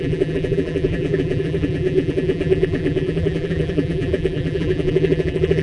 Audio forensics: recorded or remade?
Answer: remade